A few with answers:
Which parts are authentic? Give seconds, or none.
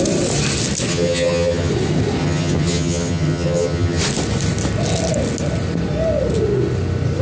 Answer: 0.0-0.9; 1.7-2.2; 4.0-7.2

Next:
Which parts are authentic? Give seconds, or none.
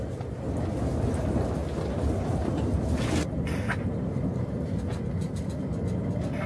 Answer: 0.0-6.5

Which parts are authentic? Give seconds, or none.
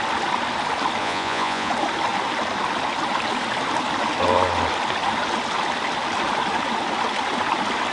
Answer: 0.0-1.0; 1.7-7.9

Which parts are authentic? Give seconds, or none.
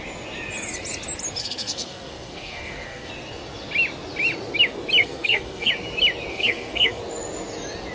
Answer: 0.0-1.4; 3.1-5.0; 5.7-6.3; 7.0-7.9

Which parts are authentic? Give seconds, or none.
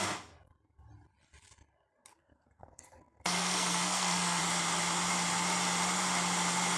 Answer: 0.0-2.1; 4.4-6.8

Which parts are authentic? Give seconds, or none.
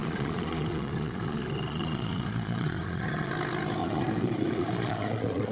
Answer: 3.3-3.8